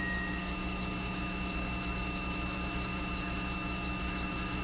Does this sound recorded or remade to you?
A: remade